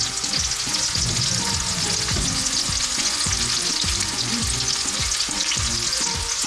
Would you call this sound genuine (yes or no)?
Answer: no